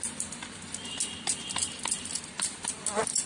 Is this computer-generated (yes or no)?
no